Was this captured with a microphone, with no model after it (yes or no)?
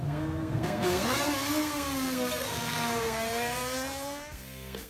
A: no